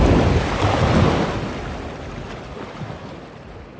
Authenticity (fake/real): real